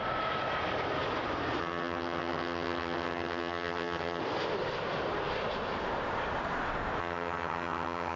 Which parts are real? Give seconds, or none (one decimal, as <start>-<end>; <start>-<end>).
0.0-1.6; 4.2-7.0